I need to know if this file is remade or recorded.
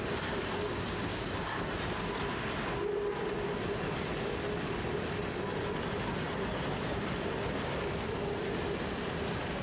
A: recorded